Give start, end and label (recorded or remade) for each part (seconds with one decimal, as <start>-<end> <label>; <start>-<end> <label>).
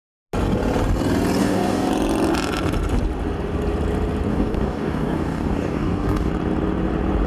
0.0-1.4 recorded; 1.4-1.9 remade; 1.9-4.3 recorded; 4.3-6.3 remade; 6.3-7.3 recorded